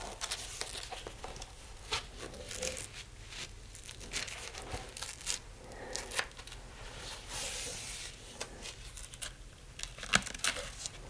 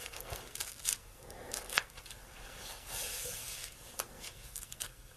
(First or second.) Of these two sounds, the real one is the first